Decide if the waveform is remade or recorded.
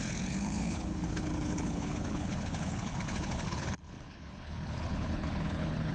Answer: remade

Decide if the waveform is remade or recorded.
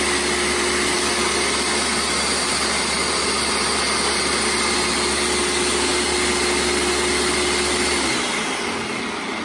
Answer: recorded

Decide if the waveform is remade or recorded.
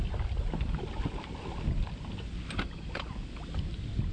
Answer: recorded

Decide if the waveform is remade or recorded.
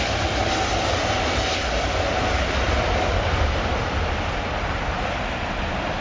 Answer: recorded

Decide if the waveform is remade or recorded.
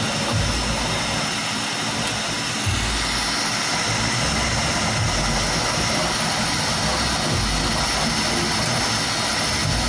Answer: recorded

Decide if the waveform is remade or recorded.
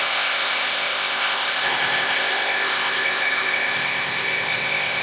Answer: remade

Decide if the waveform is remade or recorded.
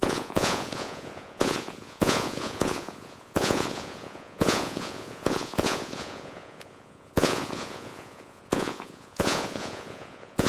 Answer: remade